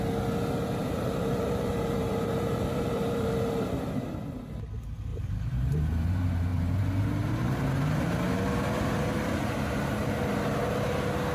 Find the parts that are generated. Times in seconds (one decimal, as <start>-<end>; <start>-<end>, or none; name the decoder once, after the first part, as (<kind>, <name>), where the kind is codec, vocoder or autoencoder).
0.8-4.4 (vocoder, BigVGAN v2); 5.1-6.1; 6.5-8.0